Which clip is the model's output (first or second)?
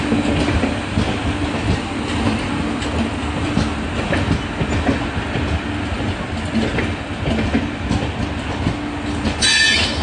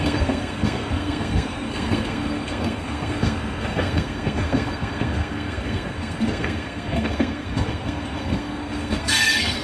second